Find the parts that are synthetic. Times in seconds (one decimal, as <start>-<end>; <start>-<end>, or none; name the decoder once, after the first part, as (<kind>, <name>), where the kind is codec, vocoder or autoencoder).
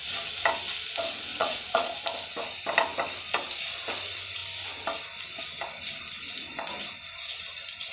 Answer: 1.3-2.0 (vocoder, Vocos)